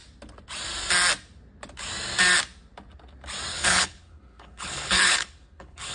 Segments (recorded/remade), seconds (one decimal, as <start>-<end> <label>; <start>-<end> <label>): 0.0-3.5 recorded; 3.5-5.9 remade